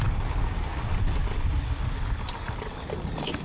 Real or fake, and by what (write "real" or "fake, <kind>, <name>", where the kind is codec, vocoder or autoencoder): real